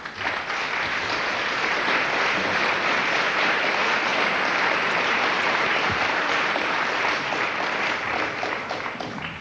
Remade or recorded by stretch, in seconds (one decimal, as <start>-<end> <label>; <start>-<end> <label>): 0.0-4.1 recorded; 4.1-7.3 remade; 7.3-9.4 recorded